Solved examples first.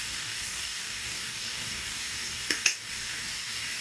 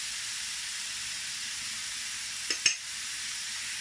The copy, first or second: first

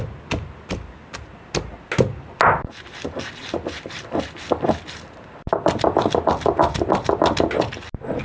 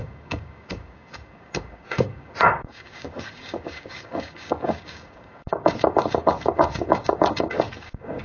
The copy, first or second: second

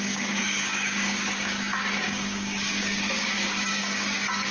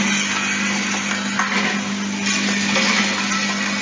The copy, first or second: first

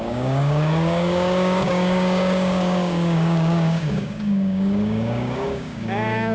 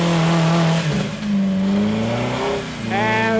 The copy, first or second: first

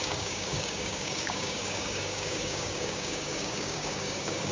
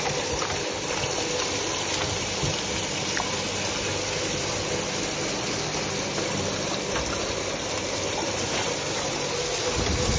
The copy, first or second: first